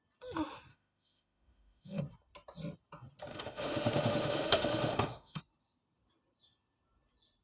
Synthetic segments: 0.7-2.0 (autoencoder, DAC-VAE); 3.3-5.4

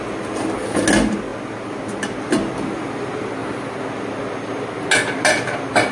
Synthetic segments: none

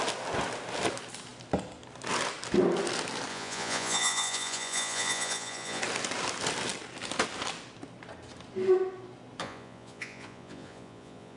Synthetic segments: 3.3-5.8 (vocoder, Vocos); 9.4-11.4

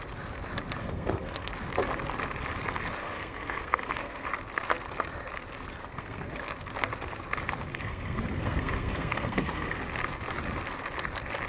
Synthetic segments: 0.8-1.5 (codec, SNAC); 3.0-4.3; 5.8-6.4; 7.7-9.8

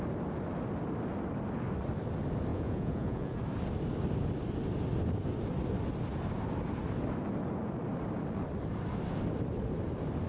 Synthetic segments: 2.5-3.4 (vocoder, Vocos)

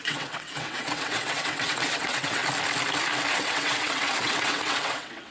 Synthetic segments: 0.0-2.4 (vocoder, WaveNeXt); 3.3-5.3

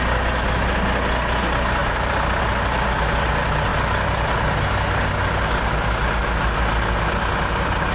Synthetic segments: 1.8-2.4 (vocoder, BigVGAN v2)